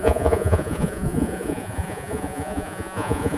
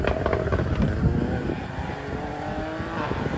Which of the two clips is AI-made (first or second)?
first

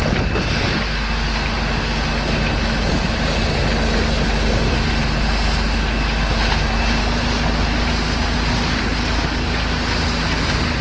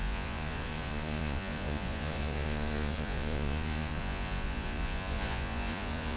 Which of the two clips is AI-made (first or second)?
second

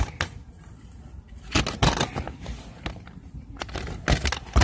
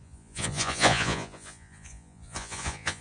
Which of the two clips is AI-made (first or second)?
second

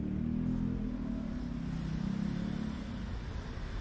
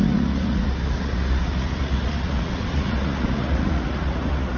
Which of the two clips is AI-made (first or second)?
second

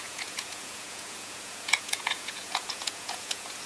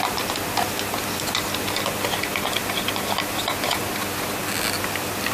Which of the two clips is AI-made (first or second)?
first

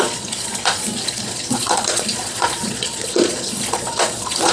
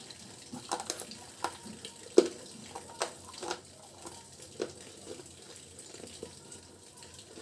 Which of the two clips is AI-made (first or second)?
first